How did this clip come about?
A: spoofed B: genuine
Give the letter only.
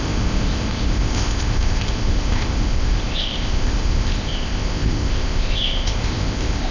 A